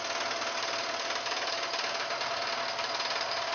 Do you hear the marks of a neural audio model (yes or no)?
no